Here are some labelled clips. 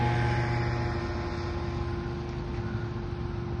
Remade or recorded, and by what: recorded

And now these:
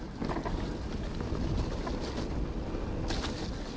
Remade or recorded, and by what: recorded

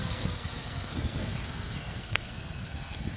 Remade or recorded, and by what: remade, codec, SNAC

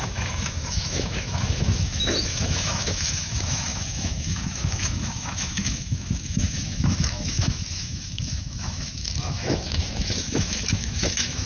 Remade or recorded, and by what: remade, autoencoder, DAC-VAE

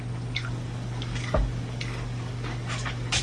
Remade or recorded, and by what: remade, codec, DAC